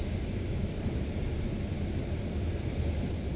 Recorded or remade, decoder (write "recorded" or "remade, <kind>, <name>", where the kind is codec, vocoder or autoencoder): recorded